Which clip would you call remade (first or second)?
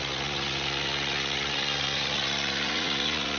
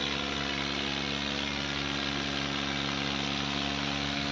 first